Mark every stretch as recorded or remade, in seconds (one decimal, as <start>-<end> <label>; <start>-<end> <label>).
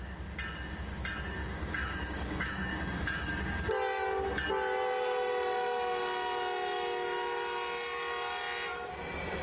0.0-1.4 recorded; 1.4-3.6 remade; 3.6-9.4 recorded